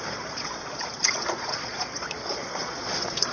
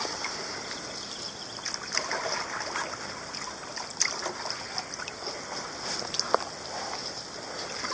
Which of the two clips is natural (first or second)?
second